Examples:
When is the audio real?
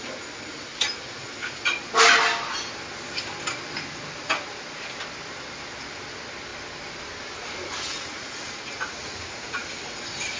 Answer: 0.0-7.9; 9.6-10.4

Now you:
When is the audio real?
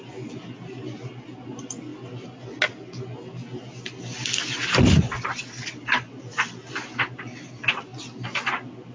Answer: 0.0-8.9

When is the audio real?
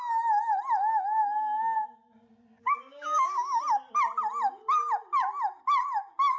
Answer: 0.0-2.6; 3.6-6.4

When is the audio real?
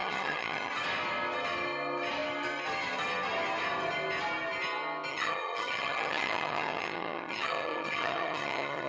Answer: 0.7-5.1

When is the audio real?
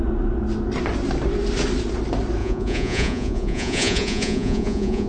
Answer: 0.0-2.4